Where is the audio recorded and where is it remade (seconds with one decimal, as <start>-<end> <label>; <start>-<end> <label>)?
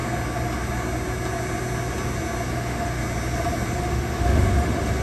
0.0-2.5 recorded; 2.5-3.0 remade; 3.0-3.8 recorded; 3.8-5.0 remade